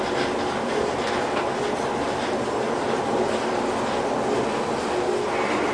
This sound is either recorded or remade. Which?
recorded